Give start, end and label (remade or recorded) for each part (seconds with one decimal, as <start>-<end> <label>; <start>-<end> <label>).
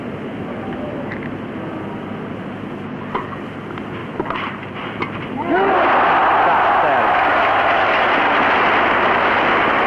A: 0.0-4.0 recorded; 4.0-5.0 remade; 5.0-9.9 recorded